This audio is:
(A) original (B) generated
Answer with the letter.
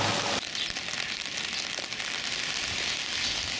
A